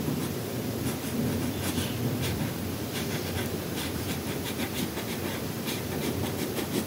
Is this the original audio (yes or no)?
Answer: no